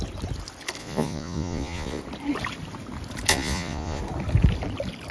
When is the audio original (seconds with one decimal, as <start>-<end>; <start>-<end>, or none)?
0.0-0.8; 2.0-3.3; 4.0-5.1